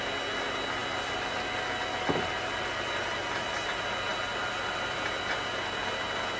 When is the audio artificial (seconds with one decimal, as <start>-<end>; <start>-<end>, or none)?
none